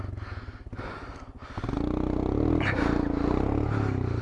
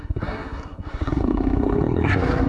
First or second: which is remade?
second